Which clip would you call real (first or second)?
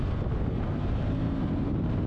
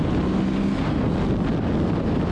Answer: second